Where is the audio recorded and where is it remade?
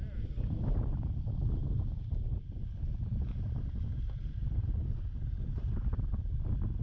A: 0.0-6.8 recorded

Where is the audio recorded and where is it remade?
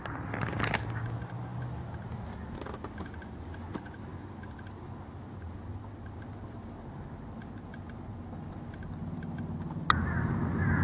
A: 0.0-8.8 recorded; 8.8-9.4 remade; 9.4-10.8 recorded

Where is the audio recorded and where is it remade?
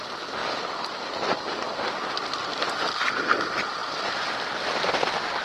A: 0.0-0.4 remade; 0.4-2.5 recorded; 2.5-3.8 remade; 3.8-4.9 recorded; 4.9-5.4 remade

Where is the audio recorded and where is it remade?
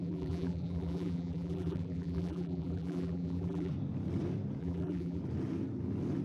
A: 0.0-3.7 remade; 3.7-4.6 recorded; 4.6-5.2 remade; 5.2-6.2 recorded